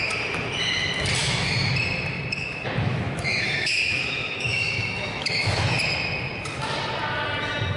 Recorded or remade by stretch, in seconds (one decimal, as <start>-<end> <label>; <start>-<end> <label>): 0.0-1.2 recorded; 1.2-1.7 remade; 1.7-2.9 recorded; 2.9-5.8 remade; 5.8-7.8 recorded